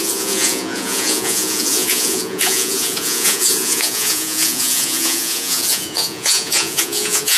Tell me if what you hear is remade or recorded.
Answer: remade